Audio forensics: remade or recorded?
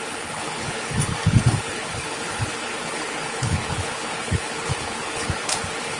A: remade